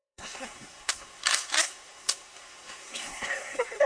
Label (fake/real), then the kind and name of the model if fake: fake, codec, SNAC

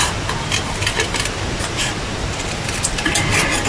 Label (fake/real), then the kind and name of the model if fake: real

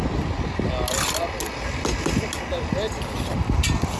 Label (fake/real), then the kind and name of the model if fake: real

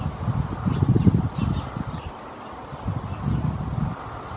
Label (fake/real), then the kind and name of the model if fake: real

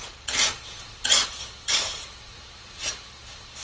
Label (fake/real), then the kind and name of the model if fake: fake, vocoder, Vocos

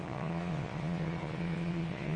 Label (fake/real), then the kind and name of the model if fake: fake, vocoder, Vocos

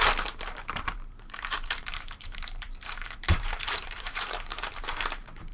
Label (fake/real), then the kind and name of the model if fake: fake, vocoder, BigVGAN v2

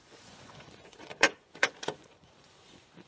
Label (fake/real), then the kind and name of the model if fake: fake, vocoder, Vocos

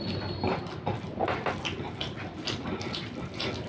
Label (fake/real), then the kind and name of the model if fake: real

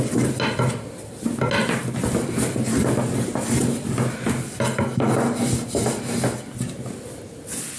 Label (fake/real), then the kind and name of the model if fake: real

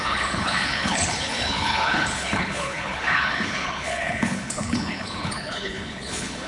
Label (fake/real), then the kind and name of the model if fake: fake, codec, HILCodec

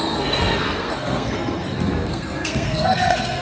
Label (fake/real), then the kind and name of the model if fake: fake, codec, SNAC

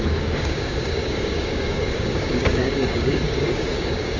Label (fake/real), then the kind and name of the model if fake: fake, codec, DAC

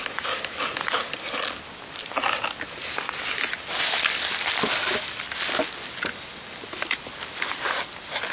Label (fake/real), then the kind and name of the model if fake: real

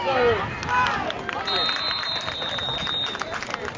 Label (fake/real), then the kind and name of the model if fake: real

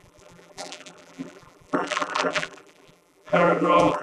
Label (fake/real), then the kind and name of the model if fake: fake, vocoder, BigVGAN v2